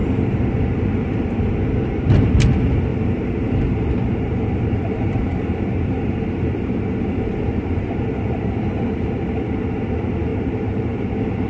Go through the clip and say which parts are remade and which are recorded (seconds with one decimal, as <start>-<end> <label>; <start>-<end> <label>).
0.0-2.9 recorded; 2.9-7.9 remade; 7.9-10.3 recorded; 10.3-11.5 remade